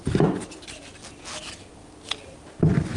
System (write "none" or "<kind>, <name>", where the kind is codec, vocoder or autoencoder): none